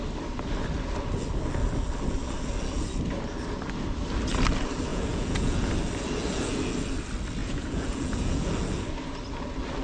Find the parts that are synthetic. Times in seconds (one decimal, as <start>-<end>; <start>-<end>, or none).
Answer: 4.9-5.7; 7.4-8.5